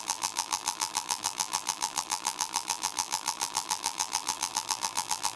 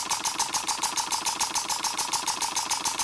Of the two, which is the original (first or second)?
second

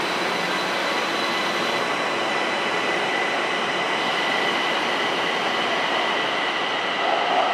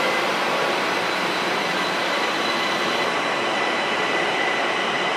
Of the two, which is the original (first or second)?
first